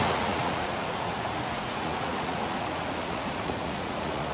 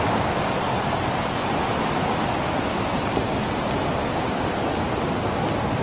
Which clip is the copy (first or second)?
first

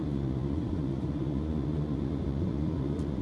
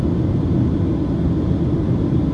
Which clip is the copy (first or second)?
first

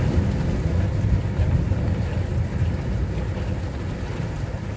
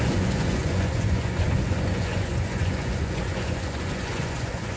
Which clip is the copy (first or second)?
second